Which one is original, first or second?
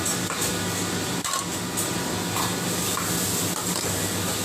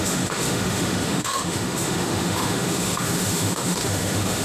first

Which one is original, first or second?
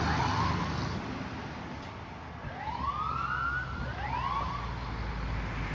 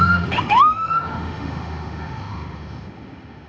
first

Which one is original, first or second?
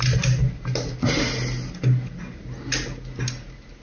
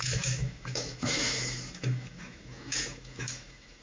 first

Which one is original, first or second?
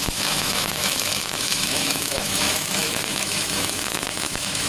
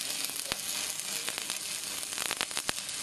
second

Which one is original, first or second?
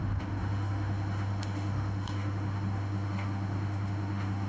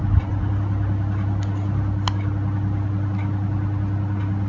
second